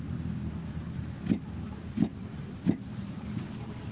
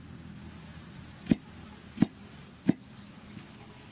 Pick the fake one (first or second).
first